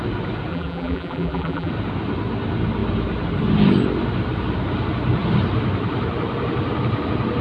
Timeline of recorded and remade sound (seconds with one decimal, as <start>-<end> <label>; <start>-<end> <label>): 0.0-0.5 recorded; 0.5-1.7 remade; 1.7-7.4 recorded